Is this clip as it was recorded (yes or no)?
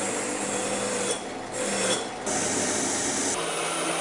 yes